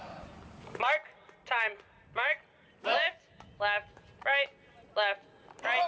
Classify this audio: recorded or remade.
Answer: recorded